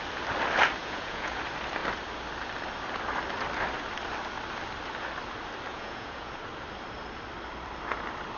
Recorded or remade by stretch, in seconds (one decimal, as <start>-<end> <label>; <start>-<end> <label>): 0.0-0.8 recorded; 0.8-1.4 remade; 1.4-5.7 recorded; 5.7-6.3 remade; 6.3-8.4 recorded